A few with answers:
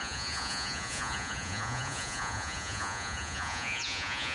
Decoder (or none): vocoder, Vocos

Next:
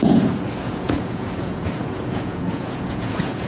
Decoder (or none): vocoder, Vocos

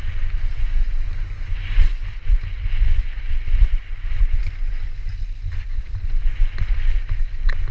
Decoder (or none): none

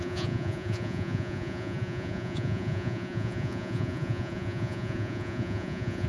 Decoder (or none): vocoder, Vocos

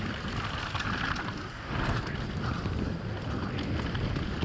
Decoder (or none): none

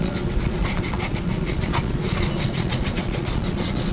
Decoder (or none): vocoder, Vocos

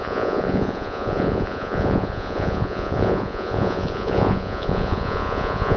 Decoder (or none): vocoder, Vocos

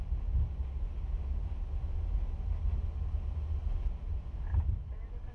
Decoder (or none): none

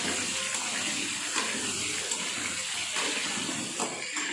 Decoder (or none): none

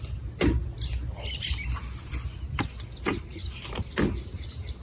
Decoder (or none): none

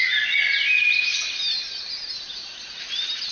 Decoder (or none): none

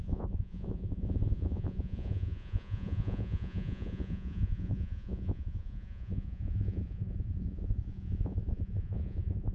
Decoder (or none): vocoder, Vocos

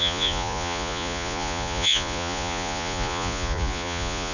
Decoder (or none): vocoder, Vocos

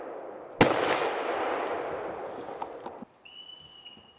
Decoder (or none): none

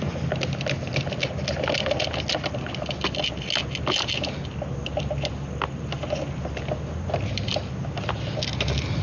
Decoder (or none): none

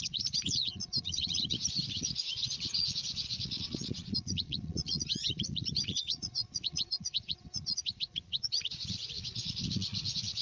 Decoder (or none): vocoder, Vocos